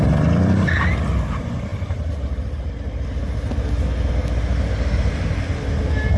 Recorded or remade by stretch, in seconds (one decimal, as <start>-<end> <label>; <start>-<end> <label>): 0.0-6.2 recorded